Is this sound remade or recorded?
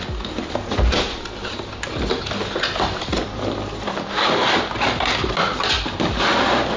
recorded